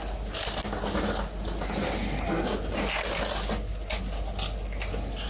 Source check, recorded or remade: recorded